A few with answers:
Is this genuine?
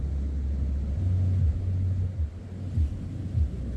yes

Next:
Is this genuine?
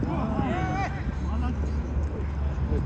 yes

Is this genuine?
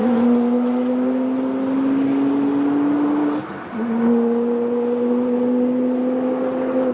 yes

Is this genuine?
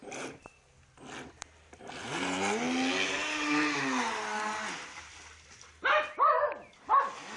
yes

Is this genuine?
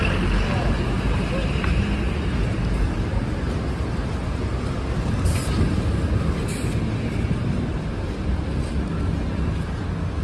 yes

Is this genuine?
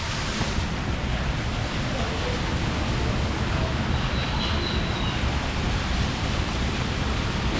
yes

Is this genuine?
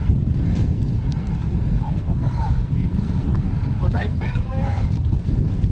no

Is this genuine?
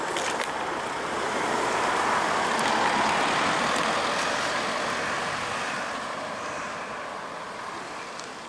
yes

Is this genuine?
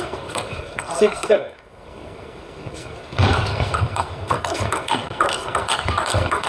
no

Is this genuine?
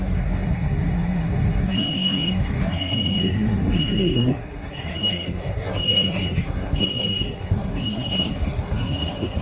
no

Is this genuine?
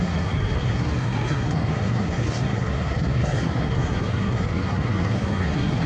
no